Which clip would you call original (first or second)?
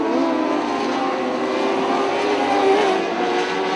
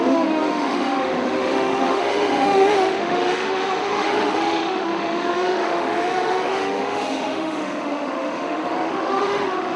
first